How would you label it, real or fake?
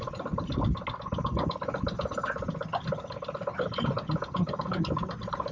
real